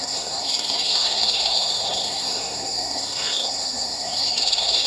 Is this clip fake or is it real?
fake